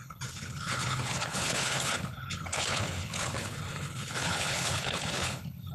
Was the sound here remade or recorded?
remade